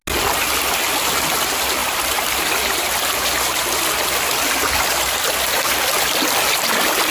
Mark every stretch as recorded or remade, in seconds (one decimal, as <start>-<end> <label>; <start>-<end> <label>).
0.0-7.1 recorded